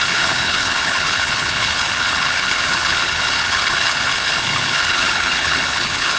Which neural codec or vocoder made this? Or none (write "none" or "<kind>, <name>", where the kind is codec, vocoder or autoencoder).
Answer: codec, HILCodec